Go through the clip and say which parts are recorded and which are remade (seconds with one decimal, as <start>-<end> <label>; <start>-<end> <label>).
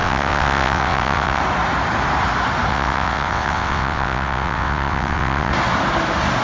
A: 0.0-1.4 remade; 1.4-2.7 recorded; 2.7-5.5 remade; 5.5-6.4 recorded